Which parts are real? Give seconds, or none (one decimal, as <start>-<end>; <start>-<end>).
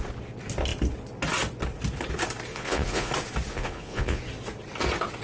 0.0-2.5; 3.1-3.5; 4.2-5.2